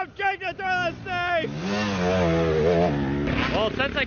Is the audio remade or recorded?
recorded